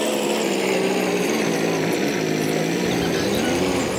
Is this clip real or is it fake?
real